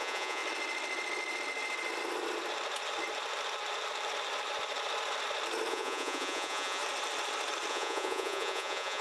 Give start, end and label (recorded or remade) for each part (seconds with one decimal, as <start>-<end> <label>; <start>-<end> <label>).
0.0-0.4 remade; 0.4-5.7 recorded; 5.7-6.8 remade; 6.8-7.7 recorded; 7.7-9.0 remade